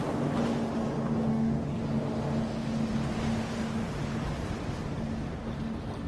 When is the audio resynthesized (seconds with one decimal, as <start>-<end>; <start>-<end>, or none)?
1.3-1.8